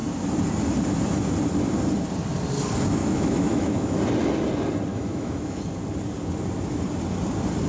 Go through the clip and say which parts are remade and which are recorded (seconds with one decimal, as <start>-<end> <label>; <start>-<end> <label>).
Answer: 0.0-3.0 recorded; 3.0-4.0 remade; 4.0-4.9 recorded; 4.9-5.7 remade; 5.7-7.7 recorded